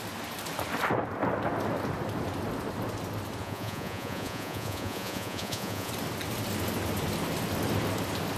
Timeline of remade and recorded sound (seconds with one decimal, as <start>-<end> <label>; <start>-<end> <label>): 0.0-3.4 recorded; 3.4-5.9 remade; 5.9-8.4 recorded